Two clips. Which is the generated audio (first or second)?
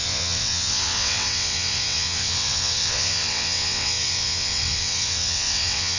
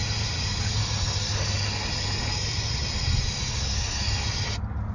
first